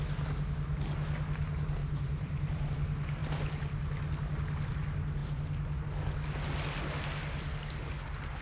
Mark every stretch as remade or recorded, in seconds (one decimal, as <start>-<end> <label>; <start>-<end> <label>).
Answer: 0.0-1.8 recorded; 1.8-2.7 remade; 2.7-8.4 recorded